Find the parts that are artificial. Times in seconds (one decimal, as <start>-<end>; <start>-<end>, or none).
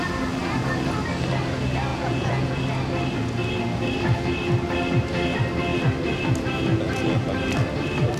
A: 1.9-2.6